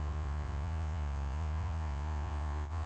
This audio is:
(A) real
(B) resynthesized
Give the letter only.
B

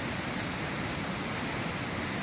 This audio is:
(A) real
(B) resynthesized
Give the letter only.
A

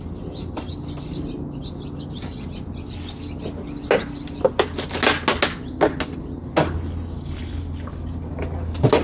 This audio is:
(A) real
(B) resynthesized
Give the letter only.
A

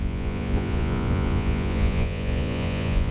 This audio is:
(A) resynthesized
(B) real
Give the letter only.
A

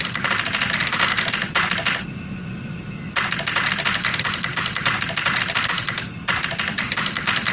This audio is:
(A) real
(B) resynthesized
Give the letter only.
A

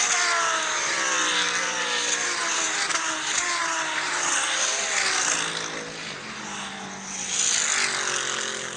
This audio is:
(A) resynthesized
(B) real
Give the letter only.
B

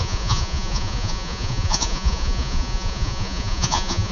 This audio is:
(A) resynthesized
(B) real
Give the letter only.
A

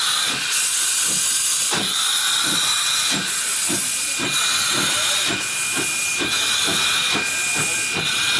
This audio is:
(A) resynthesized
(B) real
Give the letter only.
B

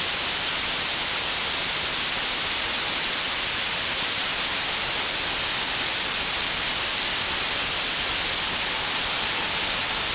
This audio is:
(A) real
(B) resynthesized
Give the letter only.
A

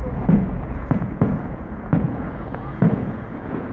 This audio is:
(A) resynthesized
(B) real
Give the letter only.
A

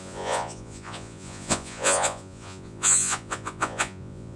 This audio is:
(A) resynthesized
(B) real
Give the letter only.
A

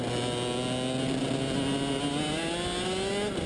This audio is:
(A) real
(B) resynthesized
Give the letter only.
A